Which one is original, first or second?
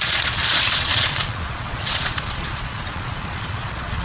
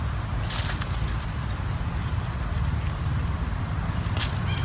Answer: second